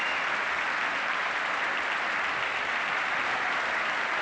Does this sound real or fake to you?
real